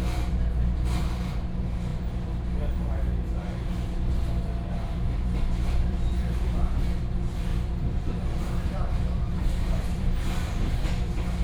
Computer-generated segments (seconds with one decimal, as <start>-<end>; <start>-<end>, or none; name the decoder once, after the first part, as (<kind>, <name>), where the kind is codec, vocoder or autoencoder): 0.0-11.4 (vocoder, BigVGAN v2)